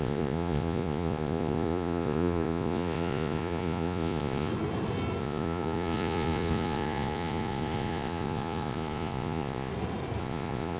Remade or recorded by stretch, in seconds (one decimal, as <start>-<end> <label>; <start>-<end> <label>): 0.0-4.5 remade; 4.5-5.2 recorded; 5.2-9.7 remade; 9.7-10.2 recorded; 10.2-10.8 remade